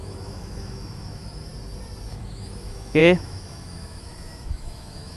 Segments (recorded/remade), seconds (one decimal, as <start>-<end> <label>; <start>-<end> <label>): 0.0-1.5 remade; 1.5-2.1 recorded; 2.1-5.2 remade